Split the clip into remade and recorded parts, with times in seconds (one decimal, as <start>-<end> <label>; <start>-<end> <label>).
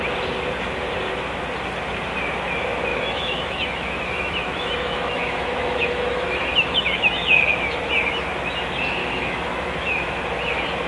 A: 0.0-2.9 recorded; 2.9-7.9 remade; 7.9-9.0 recorded; 9.0-10.2 remade; 10.2-10.9 recorded